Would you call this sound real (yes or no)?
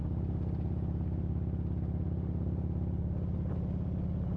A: yes